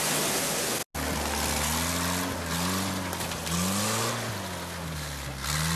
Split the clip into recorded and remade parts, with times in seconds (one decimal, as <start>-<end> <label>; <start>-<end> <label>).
0.0-5.8 recorded